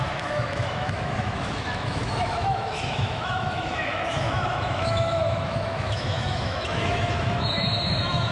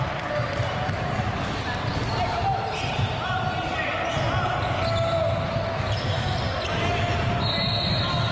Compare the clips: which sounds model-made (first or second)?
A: first